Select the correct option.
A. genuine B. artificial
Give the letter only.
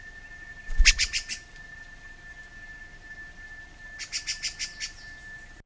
A